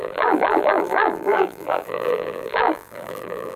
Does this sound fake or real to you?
fake